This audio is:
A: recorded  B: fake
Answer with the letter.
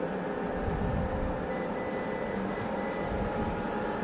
A